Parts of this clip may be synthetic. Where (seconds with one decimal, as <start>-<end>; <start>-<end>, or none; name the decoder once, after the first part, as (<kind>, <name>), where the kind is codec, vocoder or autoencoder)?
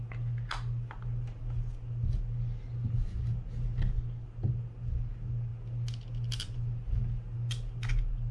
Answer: none